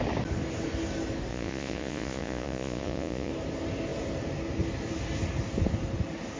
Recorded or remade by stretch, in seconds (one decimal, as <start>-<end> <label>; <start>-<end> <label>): 0.0-1.3 recorded; 1.3-3.3 remade; 3.3-6.4 recorded

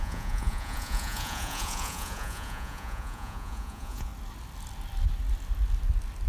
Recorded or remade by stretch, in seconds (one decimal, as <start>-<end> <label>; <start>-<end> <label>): 0.0-4.1 remade; 4.1-6.3 recorded

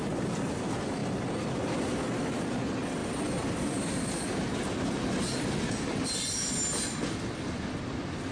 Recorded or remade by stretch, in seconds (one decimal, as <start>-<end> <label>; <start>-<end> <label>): 0.0-8.3 recorded

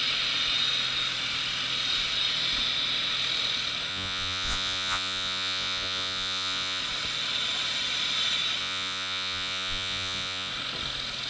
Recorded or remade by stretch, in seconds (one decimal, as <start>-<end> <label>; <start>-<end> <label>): 0.0-3.9 recorded; 3.9-6.8 remade; 6.8-8.6 recorded; 8.6-10.5 remade; 10.5-11.3 recorded

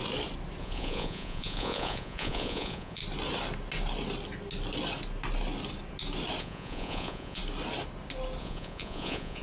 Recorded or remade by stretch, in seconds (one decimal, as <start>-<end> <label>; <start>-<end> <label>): 0.0-0.6 recorded; 0.6-3.0 remade; 3.0-6.4 recorded; 6.4-7.4 remade; 7.4-8.4 recorded; 8.4-9.4 remade

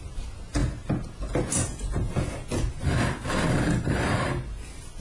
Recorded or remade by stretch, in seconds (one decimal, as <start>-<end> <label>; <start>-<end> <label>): 0.0-5.0 recorded